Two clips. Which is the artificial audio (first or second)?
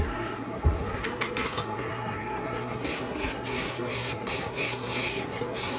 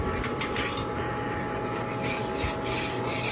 first